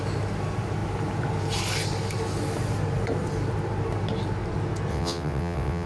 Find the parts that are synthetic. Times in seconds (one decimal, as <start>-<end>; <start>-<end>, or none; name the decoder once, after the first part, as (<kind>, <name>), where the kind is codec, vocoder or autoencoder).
4.9-5.9 (vocoder, WaveNeXt)

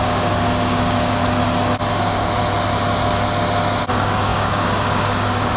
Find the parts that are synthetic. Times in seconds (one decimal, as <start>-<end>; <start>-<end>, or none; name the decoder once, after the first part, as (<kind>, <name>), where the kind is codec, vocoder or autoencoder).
0.0-1.2 (codec, DAC); 1.9-2.4; 3.9-5.6

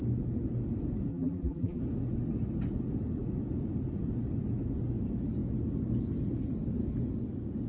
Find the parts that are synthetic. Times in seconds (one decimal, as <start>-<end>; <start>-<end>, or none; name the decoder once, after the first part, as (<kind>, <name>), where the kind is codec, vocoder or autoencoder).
1.1-1.8 (vocoder, BigVGAN v2)

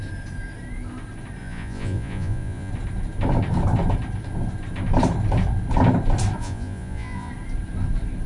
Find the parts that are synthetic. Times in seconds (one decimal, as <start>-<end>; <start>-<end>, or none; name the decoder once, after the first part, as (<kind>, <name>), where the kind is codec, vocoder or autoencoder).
1.4-2.7 (vocoder, Vocos); 6.4-7.3

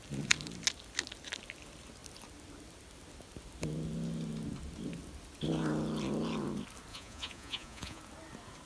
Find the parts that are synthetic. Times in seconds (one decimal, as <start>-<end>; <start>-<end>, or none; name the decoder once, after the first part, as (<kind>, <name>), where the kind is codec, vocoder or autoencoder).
6.9-8.0 (vocoder, Vocos)

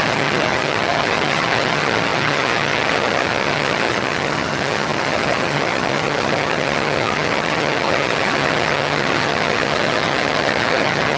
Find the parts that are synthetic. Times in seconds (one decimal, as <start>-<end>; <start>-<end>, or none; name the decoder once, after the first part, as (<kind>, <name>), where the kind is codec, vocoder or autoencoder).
0.0-11.2 (vocoder, HiFi-GAN)

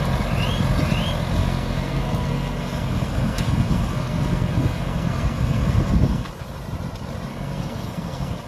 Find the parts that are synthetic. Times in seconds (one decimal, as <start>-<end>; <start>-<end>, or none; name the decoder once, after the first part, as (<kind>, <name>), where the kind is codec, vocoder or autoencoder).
1.4-6.3 (codec, SNAC); 7.3-8.5